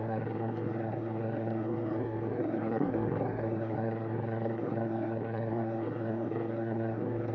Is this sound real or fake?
fake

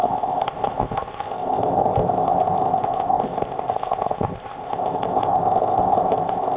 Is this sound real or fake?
fake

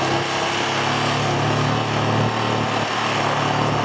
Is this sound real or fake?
real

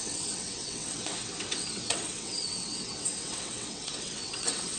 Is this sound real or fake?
fake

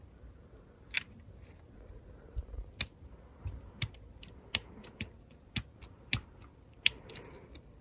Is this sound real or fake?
real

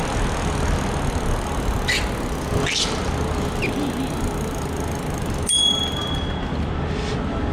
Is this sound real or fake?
real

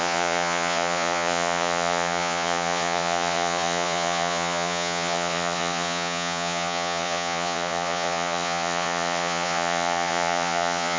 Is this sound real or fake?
fake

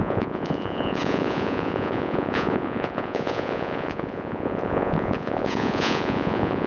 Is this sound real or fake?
fake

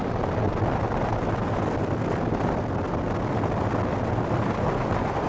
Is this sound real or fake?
real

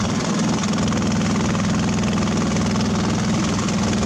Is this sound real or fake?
real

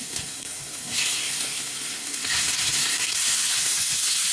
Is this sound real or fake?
fake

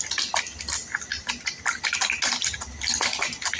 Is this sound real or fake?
real